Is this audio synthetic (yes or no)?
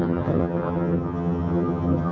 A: yes